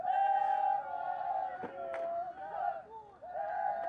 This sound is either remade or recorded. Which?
recorded